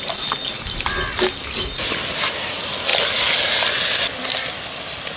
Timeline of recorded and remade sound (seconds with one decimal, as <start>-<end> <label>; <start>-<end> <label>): 0.0-5.2 recorded